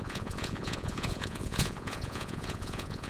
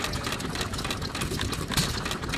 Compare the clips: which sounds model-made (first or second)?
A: first